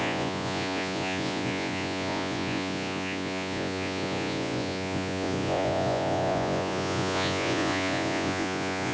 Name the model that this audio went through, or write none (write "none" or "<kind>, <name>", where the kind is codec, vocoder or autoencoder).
vocoder, Vocos